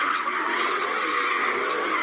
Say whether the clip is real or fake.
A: fake